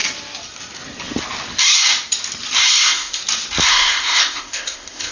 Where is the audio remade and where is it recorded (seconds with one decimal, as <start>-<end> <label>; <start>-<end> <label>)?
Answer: 0.0-2.7 recorded; 2.7-3.2 remade; 3.2-3.7 recorded; 3.7-5.1 remade